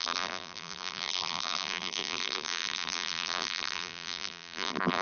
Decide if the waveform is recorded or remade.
remade